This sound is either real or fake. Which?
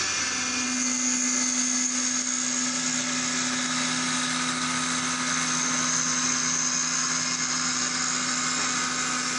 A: real